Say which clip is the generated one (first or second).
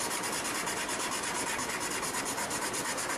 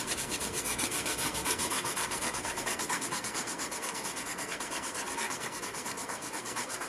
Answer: second